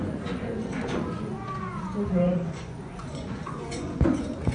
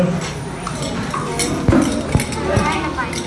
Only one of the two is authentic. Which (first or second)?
second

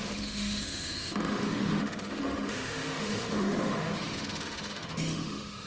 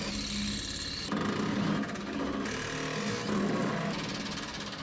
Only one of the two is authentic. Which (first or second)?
second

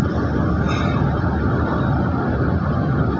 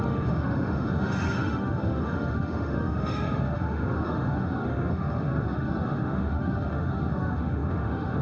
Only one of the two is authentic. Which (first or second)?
first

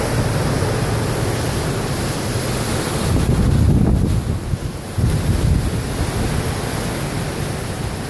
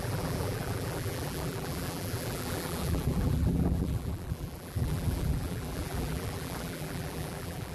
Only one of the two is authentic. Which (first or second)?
first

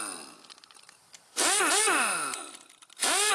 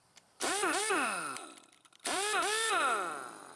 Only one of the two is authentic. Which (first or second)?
first